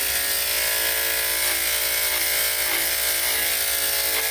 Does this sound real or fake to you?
real